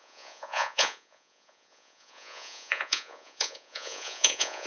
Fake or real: fake